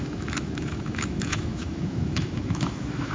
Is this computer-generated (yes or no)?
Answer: yes